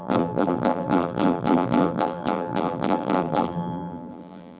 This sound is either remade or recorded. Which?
remade